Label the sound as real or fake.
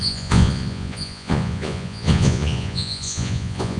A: fake